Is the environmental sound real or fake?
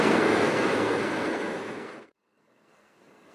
fake